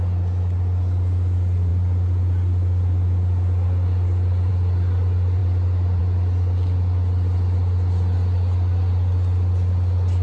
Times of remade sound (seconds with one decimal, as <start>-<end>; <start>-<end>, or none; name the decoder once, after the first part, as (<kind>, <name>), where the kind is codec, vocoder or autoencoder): none